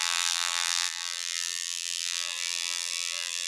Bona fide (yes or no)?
no